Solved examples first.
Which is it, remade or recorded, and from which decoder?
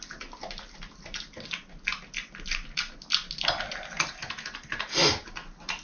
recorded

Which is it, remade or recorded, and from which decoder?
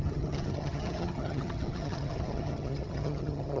remade, vocoder, HiFi-GAN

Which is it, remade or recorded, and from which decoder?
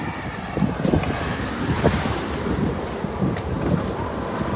recorded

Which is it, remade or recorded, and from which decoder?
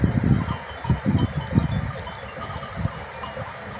recorded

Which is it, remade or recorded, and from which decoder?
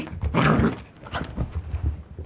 recorded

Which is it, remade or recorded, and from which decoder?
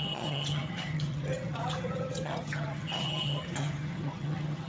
remade, vocoder, HiFi-GAN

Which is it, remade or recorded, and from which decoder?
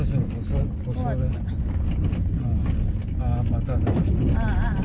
recorded